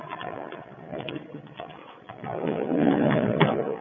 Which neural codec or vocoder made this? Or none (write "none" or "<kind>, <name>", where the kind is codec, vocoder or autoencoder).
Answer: vocoder, Vocos